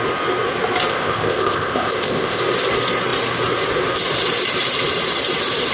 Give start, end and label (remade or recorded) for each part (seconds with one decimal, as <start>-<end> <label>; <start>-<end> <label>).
0.0-0.9 recorded; 0.9-2.4 remade; 2.4-5.7 recorded